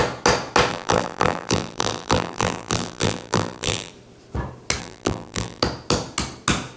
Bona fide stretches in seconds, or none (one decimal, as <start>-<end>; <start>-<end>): 0.0-0.7; 3.9-4.8; 5.6-6.8

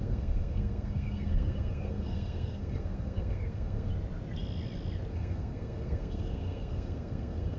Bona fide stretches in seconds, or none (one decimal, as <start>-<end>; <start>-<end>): 3.9-5.1